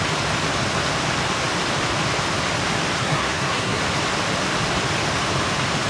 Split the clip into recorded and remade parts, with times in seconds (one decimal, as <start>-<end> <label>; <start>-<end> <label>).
0.0-3.0 recorded; 3.0-3.8 remade; 3.8-5.9 recorded